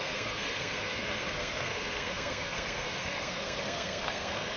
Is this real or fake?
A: fake